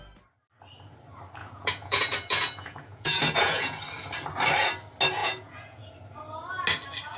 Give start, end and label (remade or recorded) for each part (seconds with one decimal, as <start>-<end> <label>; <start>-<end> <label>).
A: 0.0-1.4 recorded; 1.4-3.8 remade; 3.8-5.2 recorded; 5.2-5.9 remade; 5.9-7.2 recorded